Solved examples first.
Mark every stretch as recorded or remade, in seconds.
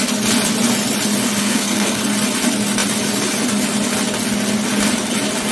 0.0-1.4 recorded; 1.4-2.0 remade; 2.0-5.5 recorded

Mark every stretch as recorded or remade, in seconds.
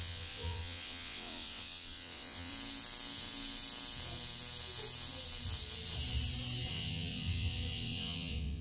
0.0-2.5 remade; 2.5-6.7 recorded; 6.7-8.6 remade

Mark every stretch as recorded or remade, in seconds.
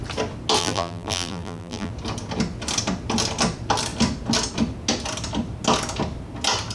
0.0-0.6 recorded; 0.6-1.9 remade; 1.9-6.7 recorded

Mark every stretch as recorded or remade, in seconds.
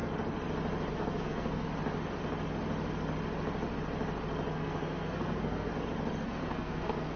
0.0-0.9 recorded; 0.9-1.7 remade; 1.7-4.5 recorded; 4.5-5.7 remade; 5.7-6.2 recorded; 6.2-7.2 remade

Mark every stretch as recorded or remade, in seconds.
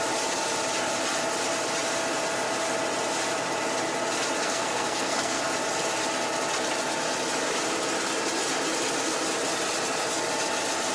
0.0-4.4 recorded; 4.4-5.4 remade; 5.4-10.9 recorded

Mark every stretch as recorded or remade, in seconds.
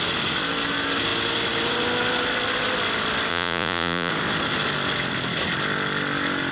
0.0-3.3 recorded; 3.3-4.1 remade; 4.1-6.5 recorded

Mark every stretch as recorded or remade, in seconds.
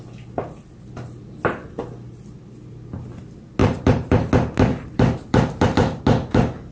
0.0-3.6 recorded; 3.6-4.3 remade; 4.3-4.7 recorded; 4.7-6.0 remade; 6.0-6.7 recorded